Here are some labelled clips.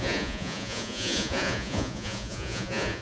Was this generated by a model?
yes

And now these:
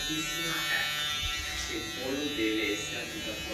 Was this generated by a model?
no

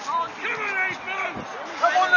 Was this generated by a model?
no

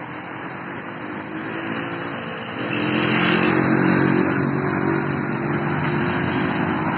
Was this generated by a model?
no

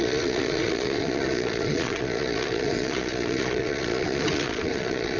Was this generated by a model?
yes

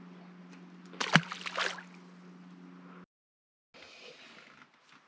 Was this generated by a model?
no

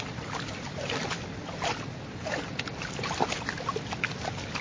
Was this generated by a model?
no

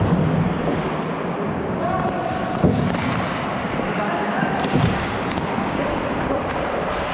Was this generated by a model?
no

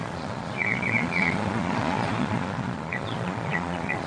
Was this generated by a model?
yes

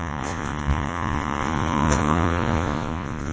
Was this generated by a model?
yes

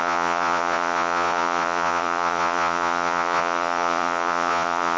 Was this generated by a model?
yes